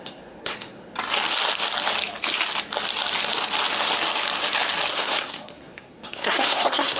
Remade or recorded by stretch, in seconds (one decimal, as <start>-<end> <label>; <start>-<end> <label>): 0.0-0.9 remade; 0.9-4.9 recorded; 4.9-7.0 remade